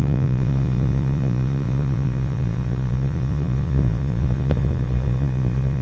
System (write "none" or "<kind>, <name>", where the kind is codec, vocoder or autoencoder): vocoder, Vocos